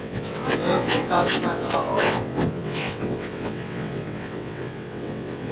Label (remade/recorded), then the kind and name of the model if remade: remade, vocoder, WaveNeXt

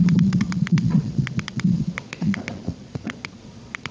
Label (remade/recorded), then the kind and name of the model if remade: remade, vocoder, Vocos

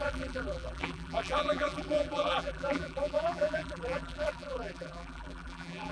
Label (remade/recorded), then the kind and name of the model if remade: remade, vocoder, BigVGAN v2